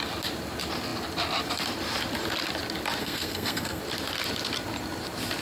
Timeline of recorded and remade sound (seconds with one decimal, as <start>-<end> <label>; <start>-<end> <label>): 0.0-3.0 recorded; 3.0-3.8 remade; 3.8-5.4 recorded

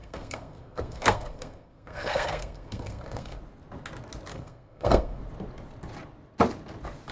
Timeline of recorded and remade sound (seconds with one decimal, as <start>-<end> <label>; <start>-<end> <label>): 0.0-3.4 remade; 3.4-4.3 recorded; 4.3-5.2 remade; 5.2-7.1 recorded

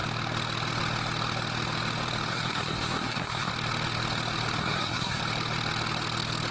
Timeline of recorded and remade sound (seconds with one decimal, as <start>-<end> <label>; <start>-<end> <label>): 0.0-2.3 recorded; 2.3-3.5 remade; 3.5-4.6 recorded; 4.6-5.2 remade; 5.2-6.5 recorded